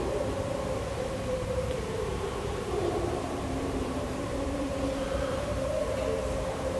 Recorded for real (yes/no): no